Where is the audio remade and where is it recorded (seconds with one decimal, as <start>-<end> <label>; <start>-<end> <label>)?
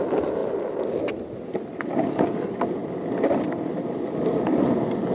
0.0-0.4 recorded; 0.4-1.0 remade; 1.0-2.8 recorded; 2.8-4.5 remade; 4.5-5.1 recorded